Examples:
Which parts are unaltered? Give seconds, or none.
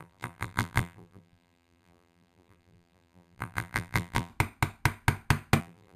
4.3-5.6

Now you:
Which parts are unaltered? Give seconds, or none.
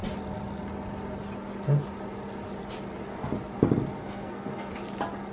0.0-4.0; 4.7-5.3